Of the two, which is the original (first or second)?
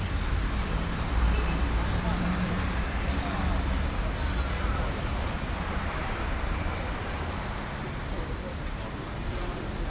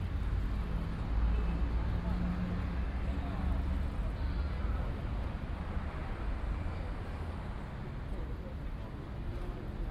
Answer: second